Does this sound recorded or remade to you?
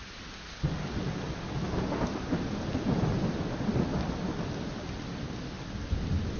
recorded